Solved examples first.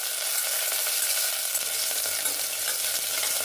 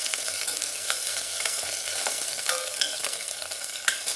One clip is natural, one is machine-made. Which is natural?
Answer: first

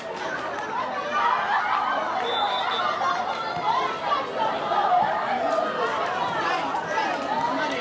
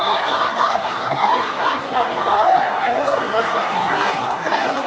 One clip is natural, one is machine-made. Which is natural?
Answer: first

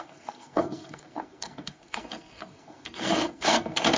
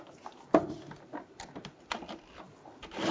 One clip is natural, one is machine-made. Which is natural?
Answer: second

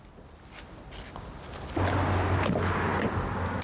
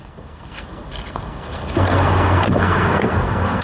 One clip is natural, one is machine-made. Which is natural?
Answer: first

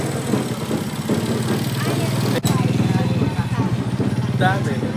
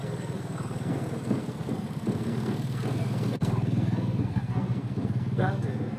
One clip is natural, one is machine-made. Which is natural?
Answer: first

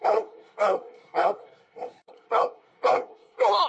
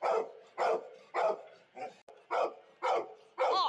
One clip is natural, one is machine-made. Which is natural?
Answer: second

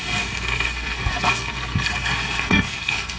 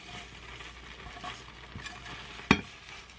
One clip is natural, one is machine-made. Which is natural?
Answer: second